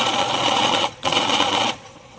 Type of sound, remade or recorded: remade